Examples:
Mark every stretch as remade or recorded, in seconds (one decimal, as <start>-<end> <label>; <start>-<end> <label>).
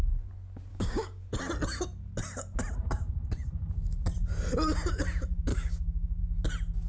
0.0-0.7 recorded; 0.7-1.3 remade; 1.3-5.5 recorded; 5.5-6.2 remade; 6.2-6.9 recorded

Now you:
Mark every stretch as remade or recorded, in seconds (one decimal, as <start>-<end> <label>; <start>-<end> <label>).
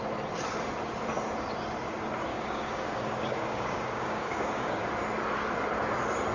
0.0-2.3 recorded; 2.3-4.9 remade; 4.9-6.3 recorded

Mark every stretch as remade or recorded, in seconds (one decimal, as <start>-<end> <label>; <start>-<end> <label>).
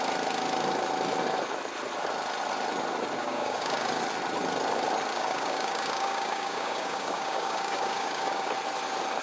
0.0-3.2 recorded; 3.2-4.0 remade; 4.0-5.1 recorded; 5.1-8.5 remade; 8.5-9.2 recorded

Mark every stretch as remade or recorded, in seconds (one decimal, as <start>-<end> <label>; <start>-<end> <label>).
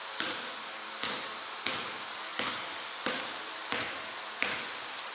0.0-5.1 recorded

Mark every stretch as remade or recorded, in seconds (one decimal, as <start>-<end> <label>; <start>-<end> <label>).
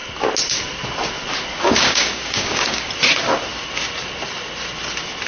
0.0-1.6 recorded; 1.6-2.9 remade; 2.9-5.3 recorded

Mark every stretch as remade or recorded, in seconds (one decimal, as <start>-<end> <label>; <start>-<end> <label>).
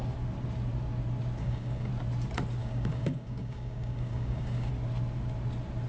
0.0-1.4 recorded; 1.4-1.9 remade; 1.9-2.6 recorded; 2.6-4.7 remade; 4.7-5.9 recorded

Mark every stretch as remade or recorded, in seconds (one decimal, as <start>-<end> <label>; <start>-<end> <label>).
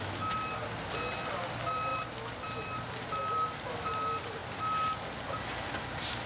0.0-6.3 recorded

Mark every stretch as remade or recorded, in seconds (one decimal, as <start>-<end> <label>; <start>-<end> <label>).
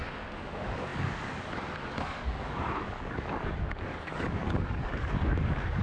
0.0-5.8 remade